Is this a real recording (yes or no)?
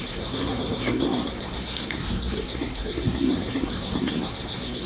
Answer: no